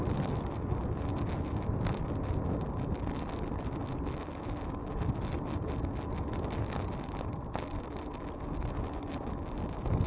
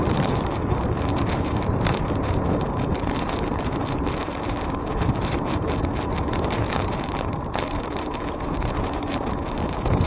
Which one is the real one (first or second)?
first